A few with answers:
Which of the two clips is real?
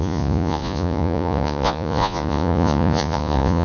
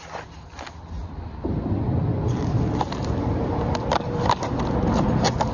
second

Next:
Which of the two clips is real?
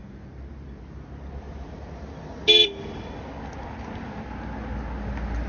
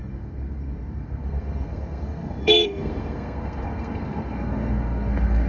first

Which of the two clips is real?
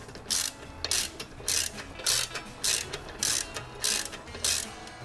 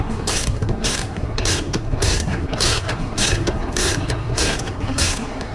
first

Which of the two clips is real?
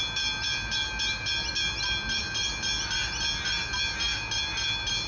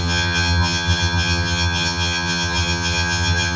first